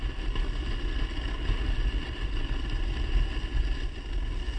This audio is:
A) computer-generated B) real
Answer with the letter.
B